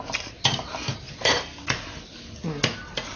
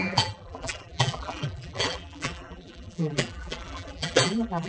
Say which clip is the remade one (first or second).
second